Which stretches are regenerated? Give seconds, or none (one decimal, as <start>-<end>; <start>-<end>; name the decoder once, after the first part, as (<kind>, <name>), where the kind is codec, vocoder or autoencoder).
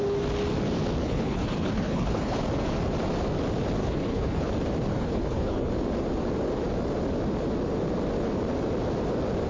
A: 1.0-2.4 (codec, HILCodec); 3.8-4.5; 4.9-5.7